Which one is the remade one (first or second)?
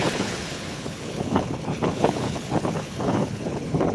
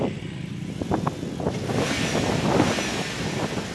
first